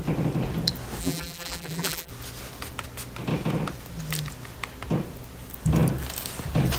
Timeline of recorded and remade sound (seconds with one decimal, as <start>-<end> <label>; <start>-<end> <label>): 0.0-1.0 recorded; 1.0-2.1 remade; 2.1-6.8 recorded